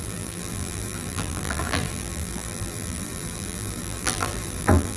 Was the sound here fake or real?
fake